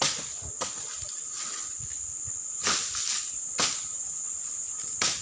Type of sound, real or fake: real